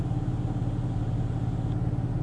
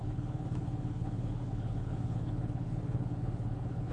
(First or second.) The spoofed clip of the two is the second